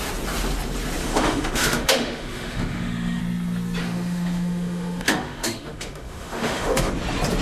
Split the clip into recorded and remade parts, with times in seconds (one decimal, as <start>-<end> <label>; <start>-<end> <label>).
0.0-1.0 recorded; 1.0-3.2 remade; 3.2-3.8 recorded; 3.8-6.9 remade; 6.9-7.4 recorded